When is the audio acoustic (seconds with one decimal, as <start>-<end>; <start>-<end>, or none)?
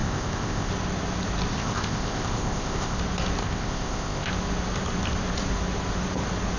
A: 0.7-1.5; 3.0-3.4; 4.3-6.6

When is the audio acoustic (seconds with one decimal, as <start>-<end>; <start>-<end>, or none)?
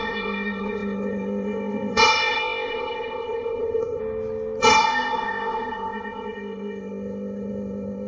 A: 4.0-4.6